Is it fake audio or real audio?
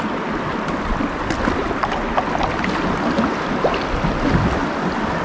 real